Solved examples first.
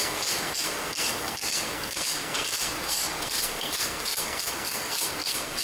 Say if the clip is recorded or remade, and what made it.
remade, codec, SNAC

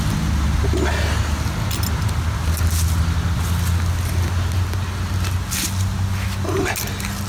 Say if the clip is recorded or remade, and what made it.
recorded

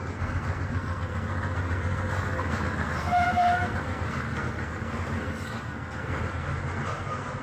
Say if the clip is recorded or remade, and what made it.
remade, codec, SNAC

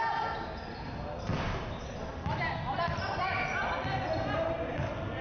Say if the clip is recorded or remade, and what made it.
recorded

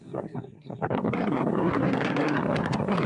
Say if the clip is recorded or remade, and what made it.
remade, codec, SNAC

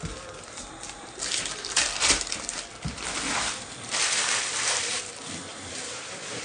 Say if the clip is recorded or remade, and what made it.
remade, vocoder, BigVGAN v2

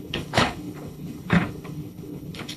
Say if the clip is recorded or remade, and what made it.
remade, codec, HILCodec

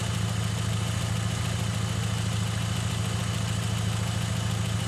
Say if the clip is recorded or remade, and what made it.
recorded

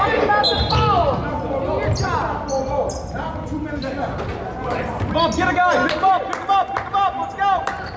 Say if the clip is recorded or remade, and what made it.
recorded